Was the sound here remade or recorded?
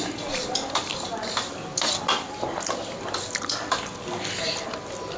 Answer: recorded